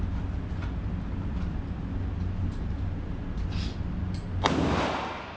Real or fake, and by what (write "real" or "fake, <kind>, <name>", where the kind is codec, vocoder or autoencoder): real